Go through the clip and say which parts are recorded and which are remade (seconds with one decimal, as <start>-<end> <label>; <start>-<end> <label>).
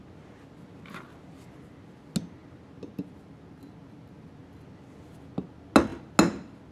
0.0-6.7 recorded